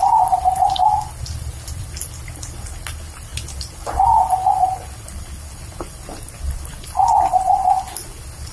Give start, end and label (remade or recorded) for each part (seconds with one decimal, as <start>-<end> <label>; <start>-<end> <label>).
0.0-8.5 recorded